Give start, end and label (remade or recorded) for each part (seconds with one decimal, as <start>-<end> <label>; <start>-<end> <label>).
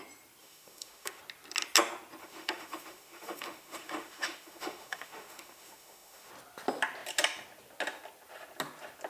0.0-0.4 recorded; 0.4-1.2 remade; 1.2-2.2 recorded; 2.2-6.3 remade; 6.3-9.1 recorded